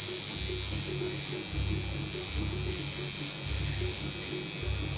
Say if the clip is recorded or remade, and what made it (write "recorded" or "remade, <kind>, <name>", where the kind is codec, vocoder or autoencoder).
recorded